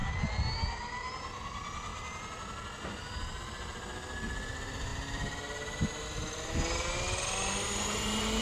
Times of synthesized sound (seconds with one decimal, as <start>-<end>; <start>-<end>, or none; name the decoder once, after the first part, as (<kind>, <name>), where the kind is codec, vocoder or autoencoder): none